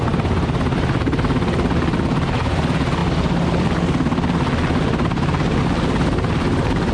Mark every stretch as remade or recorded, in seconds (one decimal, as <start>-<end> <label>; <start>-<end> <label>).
0.0-6.9 recorded